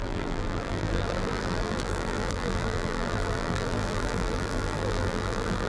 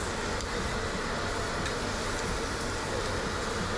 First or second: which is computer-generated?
first